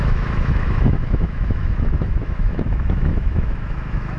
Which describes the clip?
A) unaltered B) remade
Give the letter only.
B